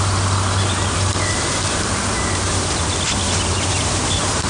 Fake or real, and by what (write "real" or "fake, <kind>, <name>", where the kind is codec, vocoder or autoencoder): real